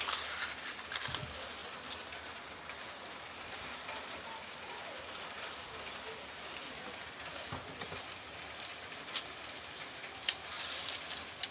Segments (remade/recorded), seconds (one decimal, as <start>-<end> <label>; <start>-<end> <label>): 0.0-11.5 recorded